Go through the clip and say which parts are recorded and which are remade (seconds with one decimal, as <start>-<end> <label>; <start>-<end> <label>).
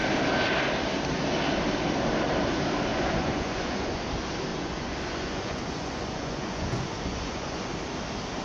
0.0-2.9 recorded; 2.9-4.0 remade; 4.0-4.5 recorded; 4.5-7.7 remade; 7.7-8.4 recorded